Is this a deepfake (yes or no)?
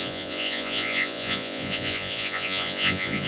yes